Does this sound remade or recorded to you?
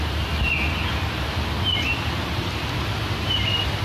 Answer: recorded